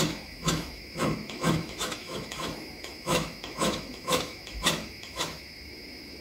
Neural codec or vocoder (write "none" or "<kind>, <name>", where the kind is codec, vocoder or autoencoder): autoencoder, DAC-VAE